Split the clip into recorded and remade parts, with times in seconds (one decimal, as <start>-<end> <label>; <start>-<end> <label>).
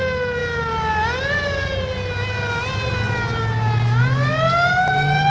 0.0-5.3 recorded